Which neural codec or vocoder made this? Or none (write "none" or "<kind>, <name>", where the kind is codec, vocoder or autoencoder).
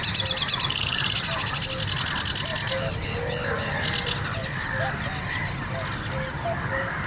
none